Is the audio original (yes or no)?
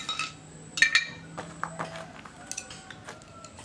yes